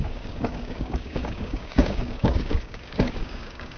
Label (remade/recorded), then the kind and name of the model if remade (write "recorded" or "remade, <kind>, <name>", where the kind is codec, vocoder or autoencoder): remade, codec, DAC